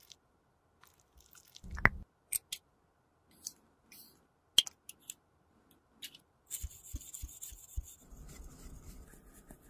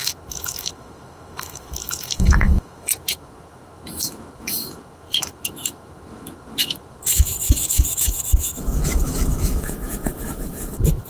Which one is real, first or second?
first